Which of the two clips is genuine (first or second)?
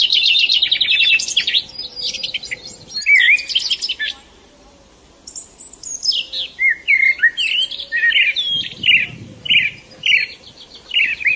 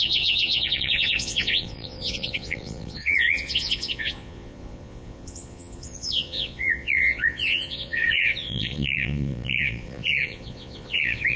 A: first